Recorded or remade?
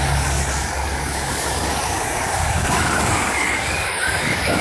remade